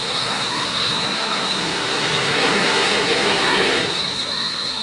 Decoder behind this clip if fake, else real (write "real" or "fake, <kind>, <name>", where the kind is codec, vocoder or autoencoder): fake, codec, SNAC